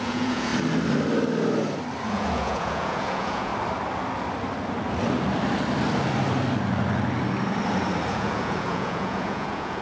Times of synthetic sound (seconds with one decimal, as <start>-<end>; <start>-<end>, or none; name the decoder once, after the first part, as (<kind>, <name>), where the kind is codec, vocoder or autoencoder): 0.0-0.5 (vocoder, Vocos); 2.1-3.5; 8.1-9.8